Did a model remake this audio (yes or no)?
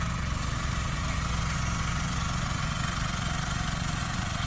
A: yes